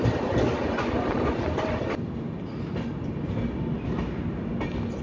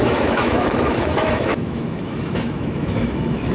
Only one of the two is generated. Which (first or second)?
second